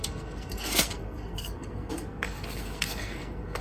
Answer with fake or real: fake